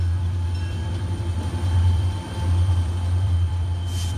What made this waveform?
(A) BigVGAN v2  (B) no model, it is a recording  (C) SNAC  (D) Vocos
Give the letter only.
A